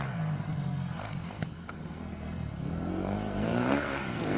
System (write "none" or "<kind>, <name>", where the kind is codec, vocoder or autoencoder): codec, SNAC